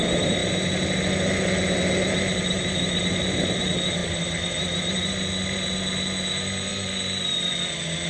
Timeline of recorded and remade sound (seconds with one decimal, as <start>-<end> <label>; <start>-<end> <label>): 0.0-4.0 recorded; 4.0-5.1 remade; 5.1-6.7 recorded; 6.7-7.5 remade; 7.5-8.1 recorded

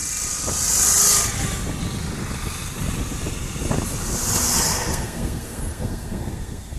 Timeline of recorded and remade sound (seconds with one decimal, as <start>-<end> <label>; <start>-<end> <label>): 0.0-4.9 recorded; 4.9-6.8 remade

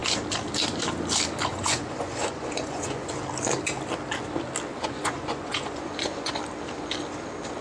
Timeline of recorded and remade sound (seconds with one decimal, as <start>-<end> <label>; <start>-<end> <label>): 0.0-1.5 recorded; 1.5-3.1 remade; 3.1-4.7 recorded; 4.7-6.3 remade; 6.3-7.6 recorded

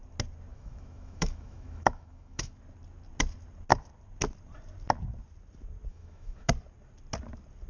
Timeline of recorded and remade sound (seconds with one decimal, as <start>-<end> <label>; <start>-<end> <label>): 0.0-0.5 recorded; 0.5-2.5 remade; 2.5-5.9 recorded; 5.9-6.5 remade; 6.5-7.7 recorded